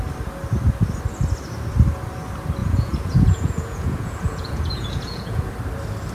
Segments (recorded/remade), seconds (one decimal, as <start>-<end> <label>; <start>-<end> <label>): 0.0-2.6 recorded; 2.6-5.5 remade; 5.5-6.1 recorded